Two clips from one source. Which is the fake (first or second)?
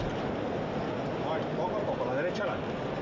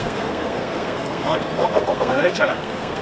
second